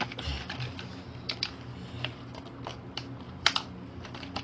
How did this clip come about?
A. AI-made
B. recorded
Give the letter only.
B